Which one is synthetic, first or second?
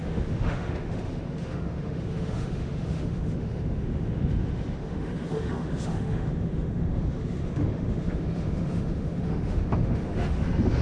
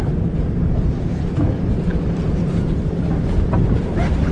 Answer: first